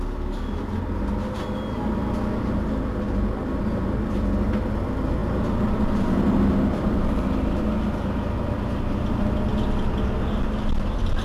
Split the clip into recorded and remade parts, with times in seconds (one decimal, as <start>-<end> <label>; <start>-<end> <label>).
0.0-11.2 recorded